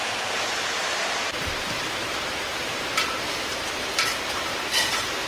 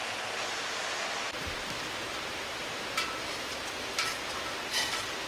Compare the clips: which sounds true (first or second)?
second